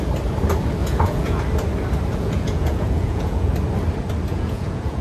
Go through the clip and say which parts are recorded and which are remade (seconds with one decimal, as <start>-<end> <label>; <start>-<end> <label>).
0.0-0.8 recorded; 0.8-1.4 remade; 1.4-2.1 recorded; 2.1-3.5 remade; 3.5-4.3 recorded; 4.3-5.0 remade